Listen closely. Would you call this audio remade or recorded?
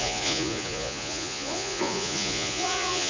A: remade